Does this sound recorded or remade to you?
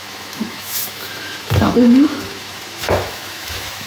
remade